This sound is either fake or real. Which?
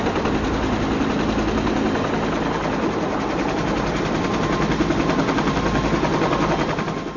real